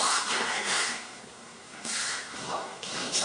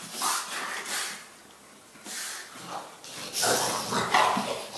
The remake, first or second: first